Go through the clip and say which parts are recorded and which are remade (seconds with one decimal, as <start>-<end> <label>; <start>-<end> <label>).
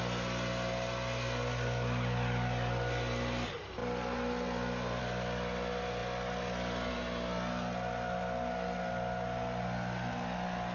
0.0-10.7 recorded